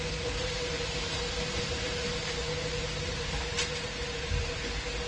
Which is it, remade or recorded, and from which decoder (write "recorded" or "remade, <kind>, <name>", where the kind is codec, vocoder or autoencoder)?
recorded